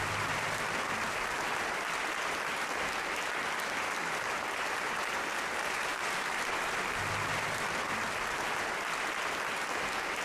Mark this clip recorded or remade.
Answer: recorded